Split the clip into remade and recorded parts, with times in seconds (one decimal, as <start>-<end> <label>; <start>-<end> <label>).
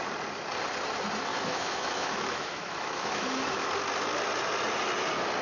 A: 0.0-1.3 recorded; 1.3-3.7 remade; 3.7-5.4 recorded